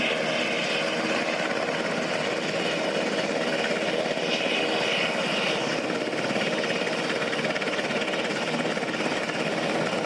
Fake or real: real